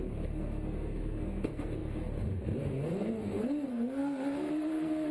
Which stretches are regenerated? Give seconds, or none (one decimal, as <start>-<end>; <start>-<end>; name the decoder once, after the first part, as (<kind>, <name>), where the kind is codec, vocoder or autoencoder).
0.0-5.1 (codec, SNAC)